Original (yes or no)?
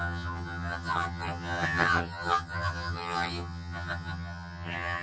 no